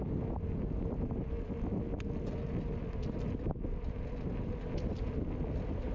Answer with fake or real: real